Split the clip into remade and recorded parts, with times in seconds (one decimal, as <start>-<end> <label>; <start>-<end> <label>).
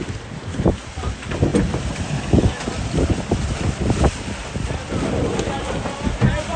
0.0-6.6 recorded